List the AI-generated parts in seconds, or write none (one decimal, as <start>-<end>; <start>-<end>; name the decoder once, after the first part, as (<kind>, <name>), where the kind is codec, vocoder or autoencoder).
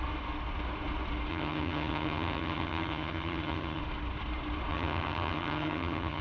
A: 1.3-3.8 (vocoder, HiFi-GAN); 4.7-6.2